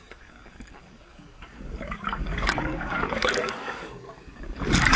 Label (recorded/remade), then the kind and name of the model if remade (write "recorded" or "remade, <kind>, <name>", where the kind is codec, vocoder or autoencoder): remade, codec, DAC